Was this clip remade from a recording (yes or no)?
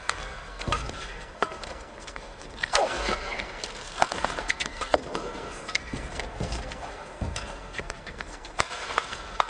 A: yes